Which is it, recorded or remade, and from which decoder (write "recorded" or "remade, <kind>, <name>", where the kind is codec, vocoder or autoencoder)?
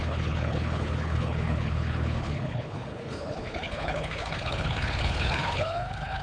remade, codec, HILCodec